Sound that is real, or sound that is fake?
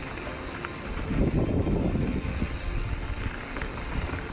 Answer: real